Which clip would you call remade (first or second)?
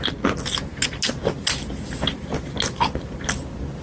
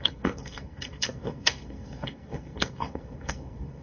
second